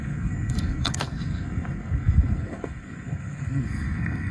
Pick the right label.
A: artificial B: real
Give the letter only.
A